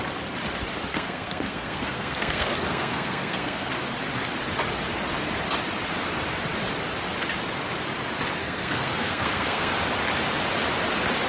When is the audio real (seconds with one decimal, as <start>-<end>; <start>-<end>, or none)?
0.0-0.9; 3.7-8.4; 9.7-11.3